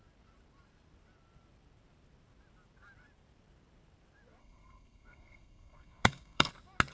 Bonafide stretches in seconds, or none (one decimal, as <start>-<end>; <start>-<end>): 0.0-4.4; 6.5-6.9